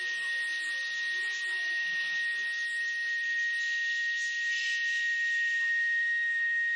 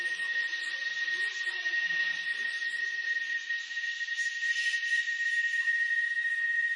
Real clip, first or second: first